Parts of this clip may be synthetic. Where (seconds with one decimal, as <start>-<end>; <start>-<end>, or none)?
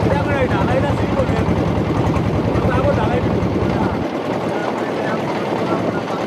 4.6-5.3